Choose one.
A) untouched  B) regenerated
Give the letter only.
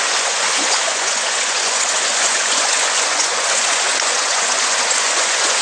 B